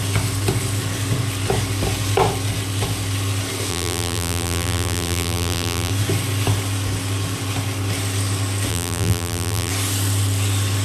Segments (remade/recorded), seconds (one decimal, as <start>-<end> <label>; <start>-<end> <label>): 0.0-3.7 recorded; 3.7-5.9 remade; 5.9-8.7 recorded; 8.7-9.7 remade; 9.7-10.8 recorded